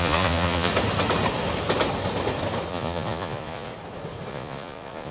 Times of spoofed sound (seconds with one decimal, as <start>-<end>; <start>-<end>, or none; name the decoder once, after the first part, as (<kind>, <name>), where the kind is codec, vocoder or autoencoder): 0.0-0.7 (vocoder, Vocos); 2.7-3.7; 4.3-5.1